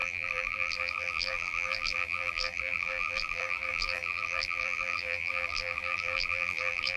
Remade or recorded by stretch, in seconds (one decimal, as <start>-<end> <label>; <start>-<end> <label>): 0.0-7.0 remade